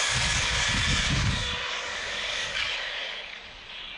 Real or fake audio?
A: fake